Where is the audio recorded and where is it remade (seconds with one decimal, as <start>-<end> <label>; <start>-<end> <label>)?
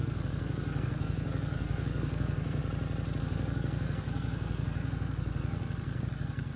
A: 0.0-2.6 remade; 2.6-3.2 recorded; 3.2-6.6 remade